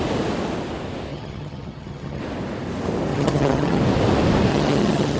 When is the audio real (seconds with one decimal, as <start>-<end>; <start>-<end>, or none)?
0.0-1.1; 2.2-3.1; 3.8-4.5